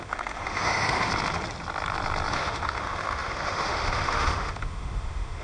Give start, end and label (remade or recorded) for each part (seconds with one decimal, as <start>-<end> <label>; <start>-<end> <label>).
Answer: 0.0-1.1 remade; 1.1-2.3 recorded; 2.3-5.4 remade